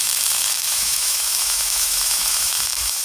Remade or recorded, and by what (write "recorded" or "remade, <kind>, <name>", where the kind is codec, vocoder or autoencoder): remade, autoencoder, DAC-VAE